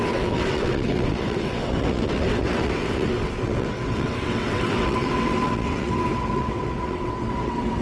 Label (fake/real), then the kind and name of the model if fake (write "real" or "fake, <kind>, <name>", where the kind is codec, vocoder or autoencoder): fake, vocoder, WaveNeXt